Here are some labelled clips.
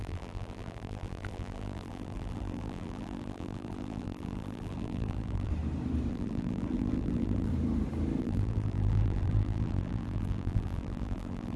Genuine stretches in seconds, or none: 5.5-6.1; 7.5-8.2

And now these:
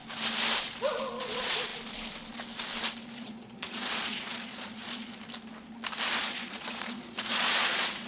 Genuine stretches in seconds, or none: 0.0-1.2; 1.7-3.1; 5.2-6.2

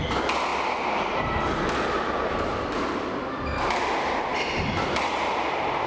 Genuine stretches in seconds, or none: 0.0-5.9

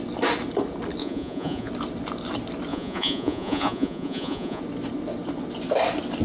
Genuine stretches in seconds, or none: 0.0-1.0; 1.7-2.7; 4.6-6.2

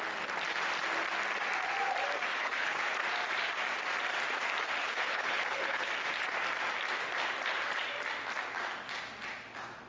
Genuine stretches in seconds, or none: 0.0-2.3; 2.9-4.8; 5.9-9.9

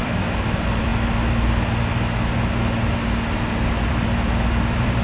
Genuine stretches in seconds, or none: 0.9-3.9

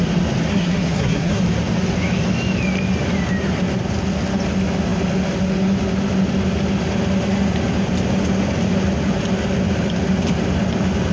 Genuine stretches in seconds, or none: 0.0-0.5; 1.4-11.1